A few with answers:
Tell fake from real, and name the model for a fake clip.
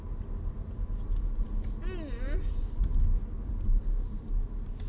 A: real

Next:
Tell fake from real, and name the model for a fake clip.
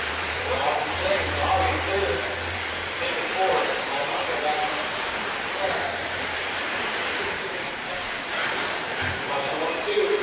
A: fake, vocoder, BigVGAN v2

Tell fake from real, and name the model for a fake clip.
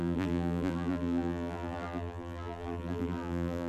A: fake, vocoder, BigVGAN v2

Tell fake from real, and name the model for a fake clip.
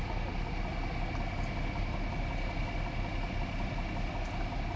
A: real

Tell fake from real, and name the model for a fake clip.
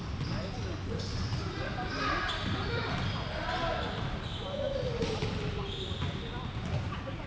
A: real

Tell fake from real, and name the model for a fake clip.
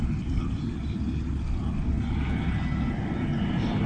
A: real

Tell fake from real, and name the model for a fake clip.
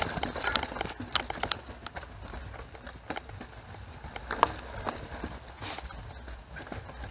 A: real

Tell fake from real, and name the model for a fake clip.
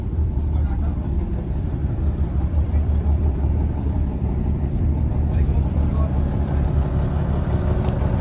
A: fake, vocoder, BigVGAN v2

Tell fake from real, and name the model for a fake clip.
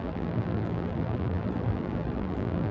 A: fake, vocoder, BigVGAN v2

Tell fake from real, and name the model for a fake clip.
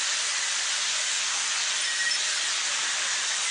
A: real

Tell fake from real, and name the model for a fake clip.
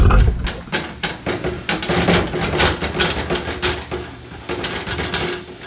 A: real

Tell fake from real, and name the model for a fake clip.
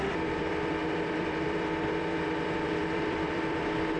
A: fake, vocoder, BigVGAN v2